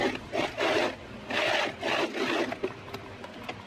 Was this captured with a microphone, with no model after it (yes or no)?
yes